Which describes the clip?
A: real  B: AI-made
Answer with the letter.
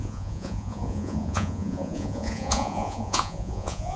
B